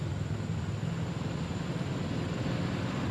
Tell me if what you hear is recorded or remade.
recorded